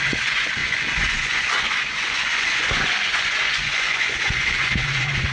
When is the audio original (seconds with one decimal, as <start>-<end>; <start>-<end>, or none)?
none